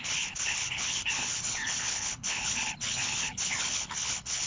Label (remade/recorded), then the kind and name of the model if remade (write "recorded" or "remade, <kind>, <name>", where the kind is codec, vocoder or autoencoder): remade, codec, HILCodec